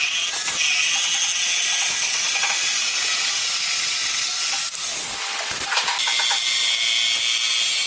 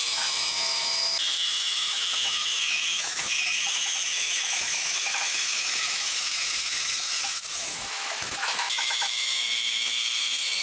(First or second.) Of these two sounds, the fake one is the second